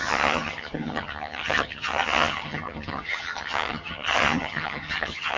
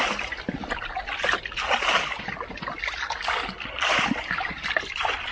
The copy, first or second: first